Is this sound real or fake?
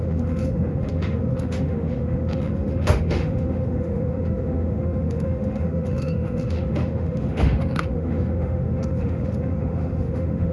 fake